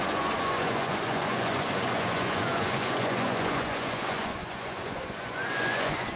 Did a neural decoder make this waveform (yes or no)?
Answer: yes